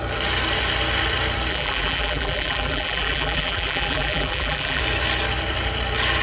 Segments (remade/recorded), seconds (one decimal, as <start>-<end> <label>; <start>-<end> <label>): 0.0-1.5 recorded; 1.5-4.8 remade; 4.8-6.2 recorded